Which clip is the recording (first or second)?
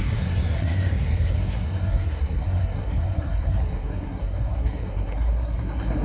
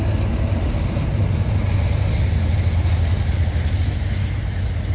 second